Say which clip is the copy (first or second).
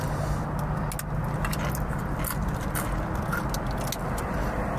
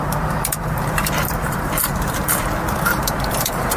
second